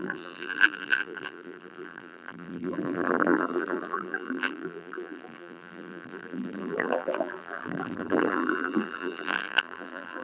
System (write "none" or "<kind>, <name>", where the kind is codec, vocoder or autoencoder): vocoder, BigVGAN v2